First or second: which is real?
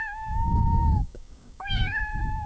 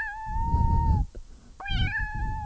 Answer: second